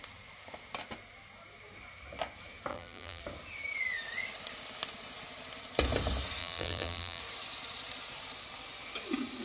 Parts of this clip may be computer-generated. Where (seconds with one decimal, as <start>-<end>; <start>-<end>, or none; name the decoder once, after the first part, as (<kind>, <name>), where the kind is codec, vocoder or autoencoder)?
2.7-3.2 (vocoder, BigVGAN v2); 6.4-7.2